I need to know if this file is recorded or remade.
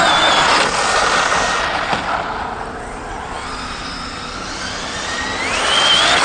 recorded